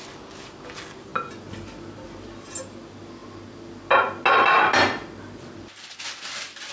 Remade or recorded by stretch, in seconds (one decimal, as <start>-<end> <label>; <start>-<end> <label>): 0.0-6.7 recorded